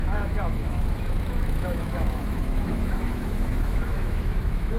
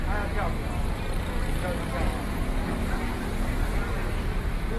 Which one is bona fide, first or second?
second